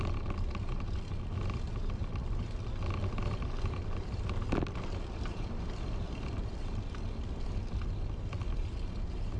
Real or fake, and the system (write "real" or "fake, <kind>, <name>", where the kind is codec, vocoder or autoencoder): real